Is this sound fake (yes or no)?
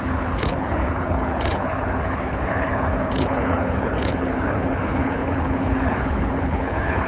yes